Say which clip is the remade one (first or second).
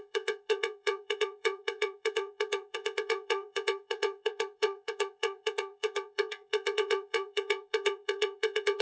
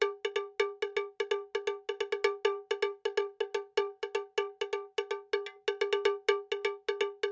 first